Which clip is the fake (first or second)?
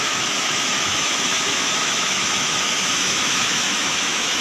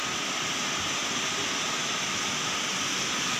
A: first